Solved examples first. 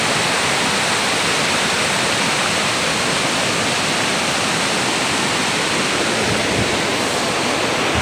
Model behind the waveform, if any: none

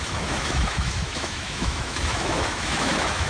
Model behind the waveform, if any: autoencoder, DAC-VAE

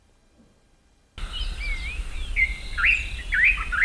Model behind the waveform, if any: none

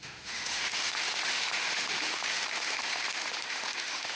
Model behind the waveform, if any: autoencoder, DAC-VAE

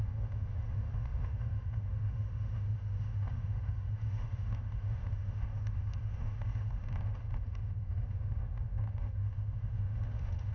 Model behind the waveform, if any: autoencoder, DAC-VAE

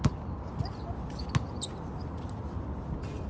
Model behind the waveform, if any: none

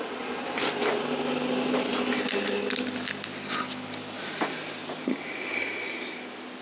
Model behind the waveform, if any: none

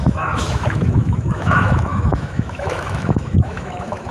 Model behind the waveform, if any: autoencoder, DAC-VAE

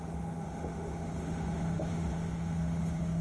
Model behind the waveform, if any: autoencoder, DAC-VAE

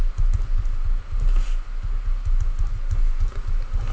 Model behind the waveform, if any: none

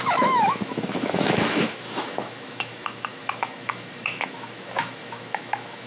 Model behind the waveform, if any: autoencoder, DAC-VAE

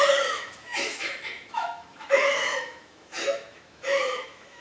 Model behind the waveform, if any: autoencoder, DAC-VAE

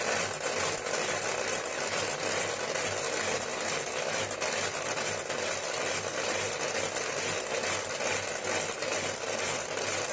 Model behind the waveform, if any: none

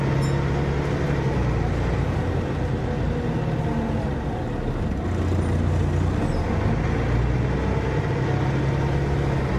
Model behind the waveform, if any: none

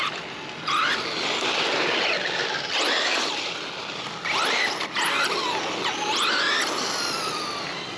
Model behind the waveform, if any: none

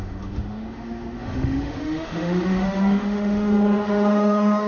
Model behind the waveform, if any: autoencoder, DAC-VAE